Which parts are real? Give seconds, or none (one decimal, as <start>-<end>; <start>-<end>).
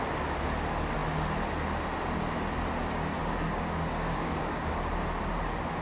0.0-3.2; 4.7-5.8